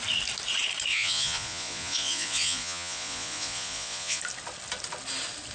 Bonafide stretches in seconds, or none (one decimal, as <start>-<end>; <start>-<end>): 0.0-0.9; 4.2-5.5